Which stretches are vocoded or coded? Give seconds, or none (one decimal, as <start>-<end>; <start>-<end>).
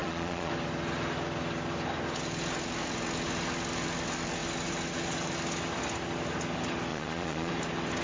0.0-0.5; 6.9-7.5